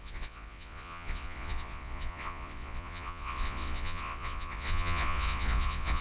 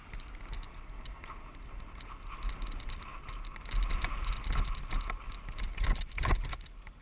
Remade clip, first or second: first